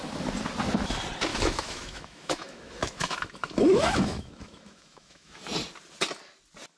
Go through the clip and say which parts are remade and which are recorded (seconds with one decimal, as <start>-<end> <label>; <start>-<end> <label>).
0.0-1.3 recorded; 1.3-5.4 remade; 5.4-6.8 recorded